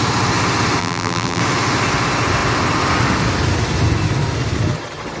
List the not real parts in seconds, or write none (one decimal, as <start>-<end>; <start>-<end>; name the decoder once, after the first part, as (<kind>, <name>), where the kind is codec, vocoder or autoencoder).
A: 0.8-1.4 (vocoder, BigVGAN v2)